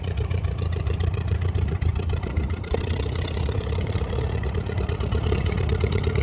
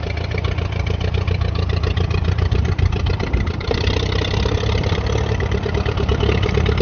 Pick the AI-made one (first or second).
first